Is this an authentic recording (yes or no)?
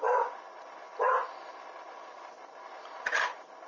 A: no